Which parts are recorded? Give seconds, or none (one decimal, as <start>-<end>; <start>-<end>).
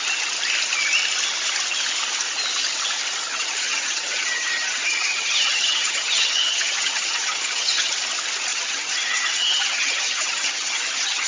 0.0-3.3; 7.9-8.5